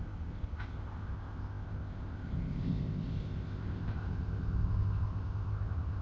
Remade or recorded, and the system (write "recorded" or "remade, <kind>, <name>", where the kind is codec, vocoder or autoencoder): remade, codec, ZipCodec